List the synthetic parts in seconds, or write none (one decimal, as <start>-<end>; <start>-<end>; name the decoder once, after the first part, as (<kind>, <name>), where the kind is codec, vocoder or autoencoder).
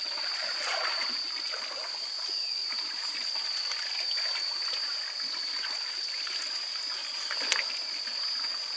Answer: none